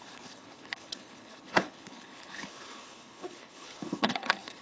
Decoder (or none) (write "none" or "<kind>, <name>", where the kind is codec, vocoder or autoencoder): codec, HILCodec